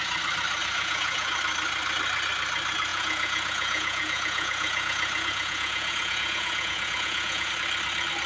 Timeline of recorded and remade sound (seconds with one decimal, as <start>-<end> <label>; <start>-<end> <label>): 0.0-0.6 recorded; 0.6-1.4 remade; 1.4-2.9 recorded; 2.9-7.5 remade; 7.5-8.3 recorded